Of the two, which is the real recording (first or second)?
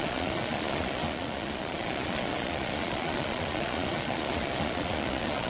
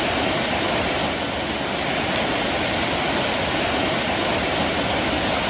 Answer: second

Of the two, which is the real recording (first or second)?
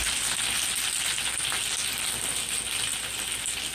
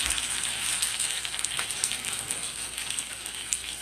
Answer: first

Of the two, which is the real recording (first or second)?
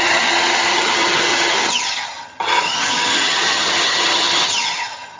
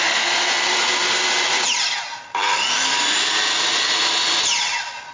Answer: second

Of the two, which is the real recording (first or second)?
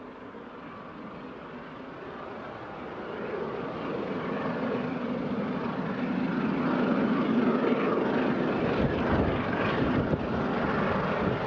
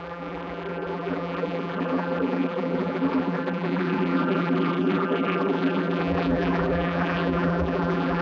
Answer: first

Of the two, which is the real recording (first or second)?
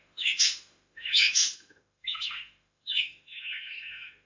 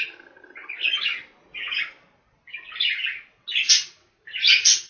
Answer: second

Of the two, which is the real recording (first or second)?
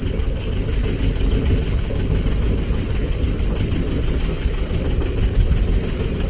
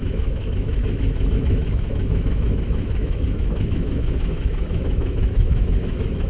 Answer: first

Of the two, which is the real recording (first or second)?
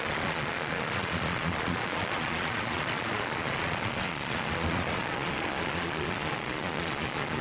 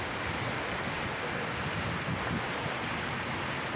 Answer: second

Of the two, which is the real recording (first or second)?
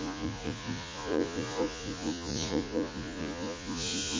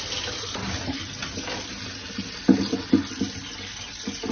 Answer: second